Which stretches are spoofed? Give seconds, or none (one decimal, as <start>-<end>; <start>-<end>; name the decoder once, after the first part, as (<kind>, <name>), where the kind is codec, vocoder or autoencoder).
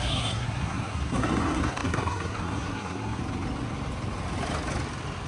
0.0-3.2 (codec, SNAC)